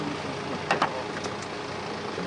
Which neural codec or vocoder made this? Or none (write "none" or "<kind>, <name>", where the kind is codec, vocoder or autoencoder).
none